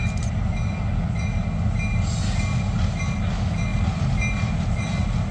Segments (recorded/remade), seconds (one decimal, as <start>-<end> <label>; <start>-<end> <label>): 0.0-5.3 recorded